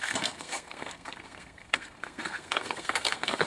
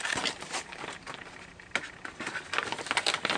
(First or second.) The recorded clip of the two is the second